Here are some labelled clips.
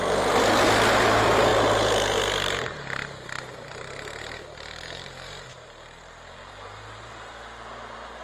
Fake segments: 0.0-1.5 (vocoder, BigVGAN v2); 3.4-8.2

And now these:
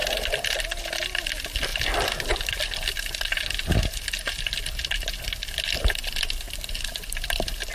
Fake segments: none

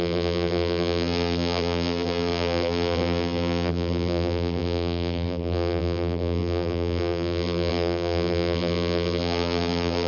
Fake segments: 0.0-10.1 (vocoder, BigVGAN v2)

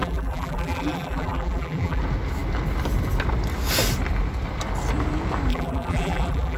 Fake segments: 0.0-2.0 (vocoder, BigVGAN v2); 5.5-6.6

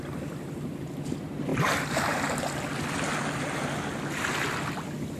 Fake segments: 1.5-2.4 (vocoder, BigVGAN v2)